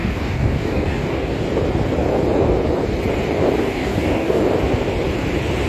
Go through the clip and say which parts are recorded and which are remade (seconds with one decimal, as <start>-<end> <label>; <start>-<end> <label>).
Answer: 0.0-1.4 remade; 1.4-3.6 recorded; 3.6-4.4 remade; 4.4-5.7 recorded